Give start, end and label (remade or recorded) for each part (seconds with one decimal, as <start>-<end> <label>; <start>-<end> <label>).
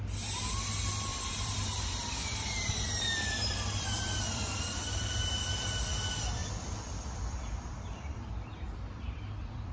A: 0.0-1.1 recorded; 1.1-5.7 remade; 5.7-6.4 recorded; 6.4-9.7 remade